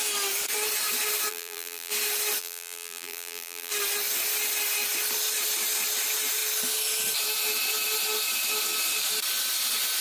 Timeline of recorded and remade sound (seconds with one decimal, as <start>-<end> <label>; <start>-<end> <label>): 0.0-1.3 recorded; 1.3-1.9 remade; 1.9-2.4 recorded; 2.4-3.7 remade; 3.7-10.0 recorded